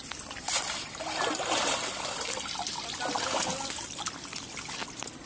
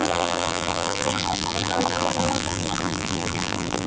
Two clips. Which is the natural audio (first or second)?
first